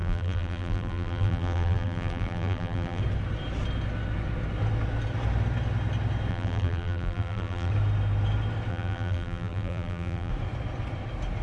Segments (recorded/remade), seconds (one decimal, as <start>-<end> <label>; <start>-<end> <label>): 0.0-3.0 remade; 3.0-6.3 recorded; 6.3-7.7 remade; 7.7-8.7 recorded; 8.7-10.3 remade; 10.3-11.4 recorded